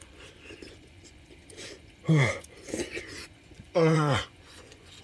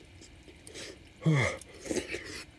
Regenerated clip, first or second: first